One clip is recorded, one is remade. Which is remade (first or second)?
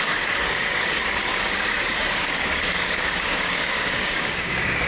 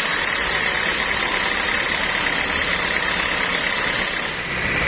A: first